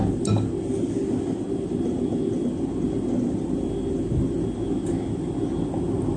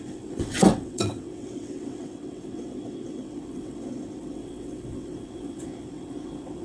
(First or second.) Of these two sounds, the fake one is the second